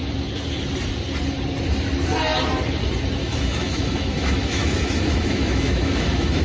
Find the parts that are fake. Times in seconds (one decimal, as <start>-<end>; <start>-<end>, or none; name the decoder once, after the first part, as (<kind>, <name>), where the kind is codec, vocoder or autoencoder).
3.2-6.4 (autoencoder, DAC-VAE)